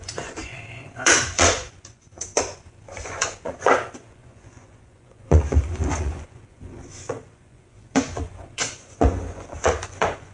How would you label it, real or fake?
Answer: fake